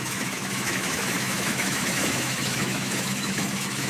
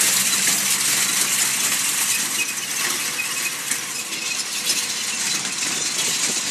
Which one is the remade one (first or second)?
first